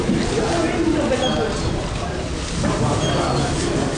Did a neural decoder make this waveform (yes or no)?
no